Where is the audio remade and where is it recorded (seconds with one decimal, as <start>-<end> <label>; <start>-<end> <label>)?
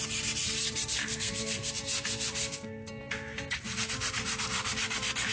0.0-1.0 recorded; 1.0-1.7 remade; 1.7-2.4 recorded; 2.4-3.0 remade; 3.0-5.3 recorded